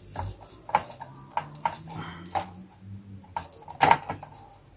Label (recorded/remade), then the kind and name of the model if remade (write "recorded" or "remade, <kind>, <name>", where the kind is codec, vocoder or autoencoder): recorded